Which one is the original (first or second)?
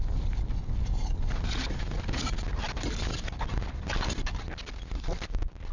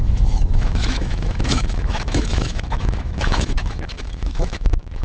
first